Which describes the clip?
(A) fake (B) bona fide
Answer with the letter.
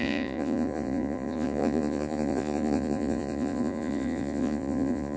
A